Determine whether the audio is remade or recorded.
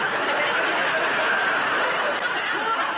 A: recorded